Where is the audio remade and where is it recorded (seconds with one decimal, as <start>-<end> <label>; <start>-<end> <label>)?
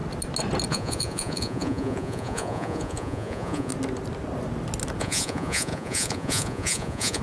0.0-0.7 recorded; 0.7-3.7 remade; 3.7-5.0 recorded; 5.0-7.2 remade